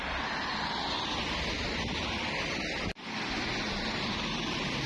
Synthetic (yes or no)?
no